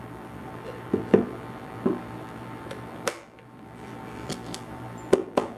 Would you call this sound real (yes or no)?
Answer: no